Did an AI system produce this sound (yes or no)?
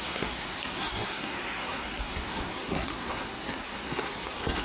yes